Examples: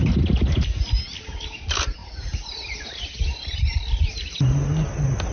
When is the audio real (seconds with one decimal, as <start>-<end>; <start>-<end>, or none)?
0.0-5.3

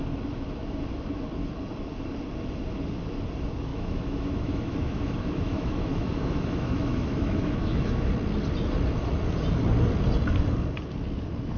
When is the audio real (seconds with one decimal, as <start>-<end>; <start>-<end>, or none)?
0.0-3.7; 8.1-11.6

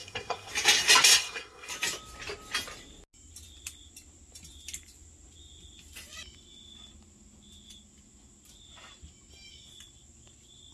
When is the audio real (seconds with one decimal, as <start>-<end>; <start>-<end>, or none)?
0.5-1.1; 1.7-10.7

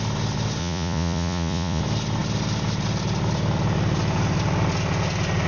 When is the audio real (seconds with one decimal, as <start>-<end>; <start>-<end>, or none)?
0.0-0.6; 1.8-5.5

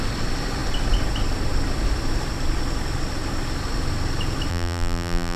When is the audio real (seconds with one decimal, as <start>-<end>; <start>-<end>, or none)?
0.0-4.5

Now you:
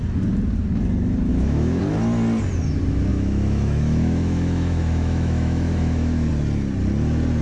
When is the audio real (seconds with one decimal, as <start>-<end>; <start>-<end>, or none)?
0.0-1.3; 1.8-3.1; 6.3-7.4